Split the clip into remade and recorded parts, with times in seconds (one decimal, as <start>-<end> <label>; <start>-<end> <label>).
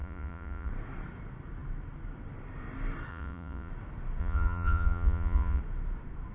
0.0-0.7 remade; 0.7-3.1 recorded; 3.1-3.7 remade; 3.7-4.2 recorded; 4.2-5.6 remade; 5.6-6.3 recorded